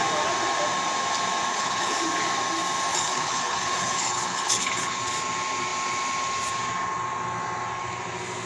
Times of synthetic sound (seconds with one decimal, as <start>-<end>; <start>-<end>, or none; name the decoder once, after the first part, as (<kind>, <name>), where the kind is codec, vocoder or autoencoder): 1.5-2.0 (codec, HILCodec); 2.9-5.0